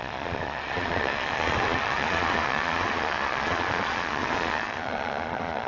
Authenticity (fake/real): fake